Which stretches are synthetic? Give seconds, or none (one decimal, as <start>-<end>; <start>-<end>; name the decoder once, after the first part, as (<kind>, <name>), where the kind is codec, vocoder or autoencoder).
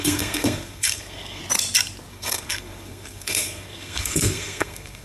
0.0-1.4 (codec, SNAC); 2.1-5.0